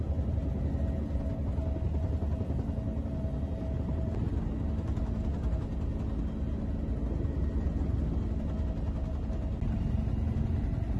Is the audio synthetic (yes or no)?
no